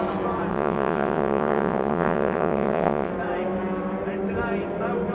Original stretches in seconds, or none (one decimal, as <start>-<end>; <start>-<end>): 0.0-0.5; 3.1-5.1